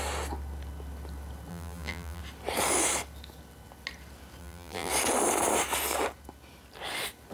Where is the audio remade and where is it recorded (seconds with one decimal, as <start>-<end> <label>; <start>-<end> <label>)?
0.0-1.5 recorded; 1.5-2.2 remade; 2.2-4.4 recorded; 4.4-4.9 remade; 4.9-7.3 recorded